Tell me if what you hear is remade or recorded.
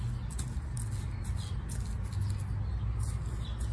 recorded